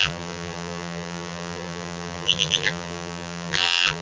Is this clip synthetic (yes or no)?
yes